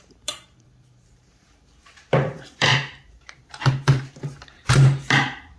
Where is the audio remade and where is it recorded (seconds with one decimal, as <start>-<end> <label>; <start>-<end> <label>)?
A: 0.0-5.6 remade